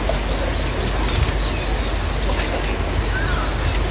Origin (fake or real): real